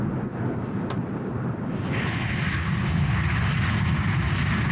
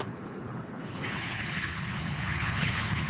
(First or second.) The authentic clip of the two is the first